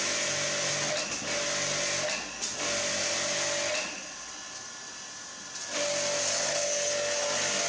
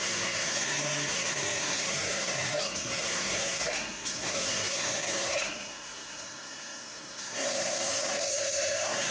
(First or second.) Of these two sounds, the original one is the first